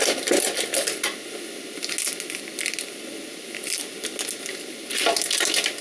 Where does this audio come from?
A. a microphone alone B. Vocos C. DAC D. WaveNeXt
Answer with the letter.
A